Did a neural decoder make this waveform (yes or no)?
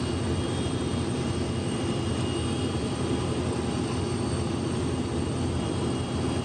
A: no